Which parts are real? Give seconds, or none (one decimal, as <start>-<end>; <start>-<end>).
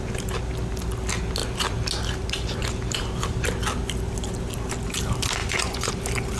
0.0-5.4; 5.9-6.4